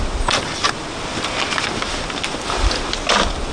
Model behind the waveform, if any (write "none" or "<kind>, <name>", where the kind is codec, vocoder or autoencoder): none